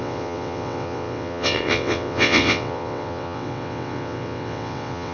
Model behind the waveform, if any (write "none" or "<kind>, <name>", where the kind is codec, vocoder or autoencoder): vocoder, WaveNeXt